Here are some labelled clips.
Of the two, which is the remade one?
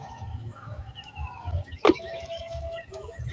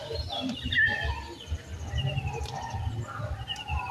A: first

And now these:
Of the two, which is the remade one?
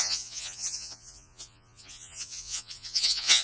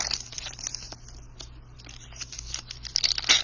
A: first